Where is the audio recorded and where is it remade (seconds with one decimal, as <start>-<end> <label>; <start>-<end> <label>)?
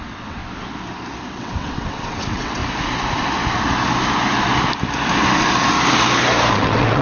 0.0-0.4 remade; 0.4-1.3 recorded; 1.3-2.6 remade; 2.6-6.5 recorded; 6.5-7.0 remade